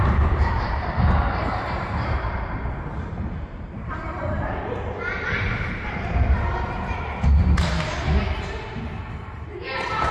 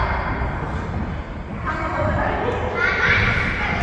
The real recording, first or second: second